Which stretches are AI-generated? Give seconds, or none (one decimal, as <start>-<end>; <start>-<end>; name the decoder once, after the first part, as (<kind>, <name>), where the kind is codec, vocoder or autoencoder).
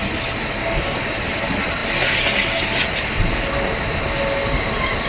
0.6-1.2 (codec, DAC)